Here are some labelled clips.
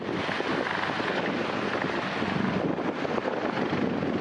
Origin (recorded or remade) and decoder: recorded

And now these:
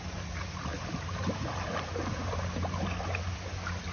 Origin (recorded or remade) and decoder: recorded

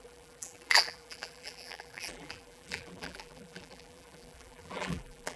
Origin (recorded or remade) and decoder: remade, vocoder, BigVGAN v2